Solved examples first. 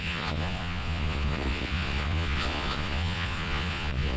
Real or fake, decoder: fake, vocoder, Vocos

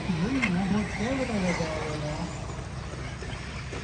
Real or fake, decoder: real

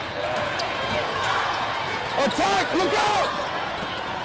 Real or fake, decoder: fake, vocoder, Vocos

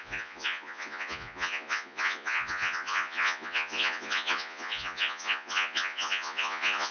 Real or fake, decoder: fake, vocoder, Vocos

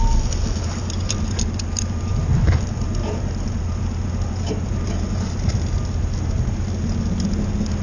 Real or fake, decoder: real